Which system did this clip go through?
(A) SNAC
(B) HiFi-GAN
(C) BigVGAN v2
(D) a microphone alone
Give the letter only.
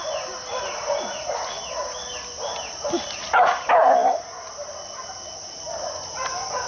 D